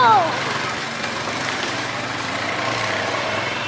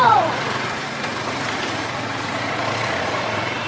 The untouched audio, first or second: first